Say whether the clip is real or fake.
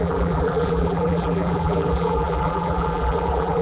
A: fake